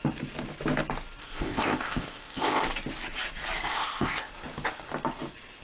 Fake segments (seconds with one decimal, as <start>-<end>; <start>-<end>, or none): 1.2-2.6; 3.7-4.3

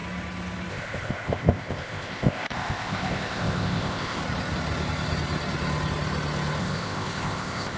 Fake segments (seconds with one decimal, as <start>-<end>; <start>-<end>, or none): 0.7-4.2; 6.6-7.8

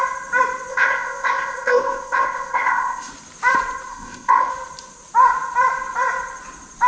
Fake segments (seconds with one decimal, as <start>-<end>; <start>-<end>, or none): 0.7-3.1; 3.9-4.5

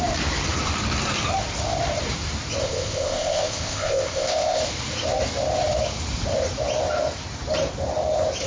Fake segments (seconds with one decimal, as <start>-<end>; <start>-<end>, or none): 2.6-4.6

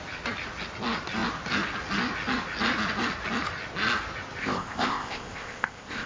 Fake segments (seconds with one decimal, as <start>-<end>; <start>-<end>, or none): 4.4-6.1

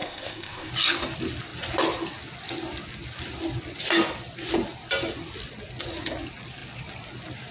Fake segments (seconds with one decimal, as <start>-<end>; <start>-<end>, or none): 0.0-0.7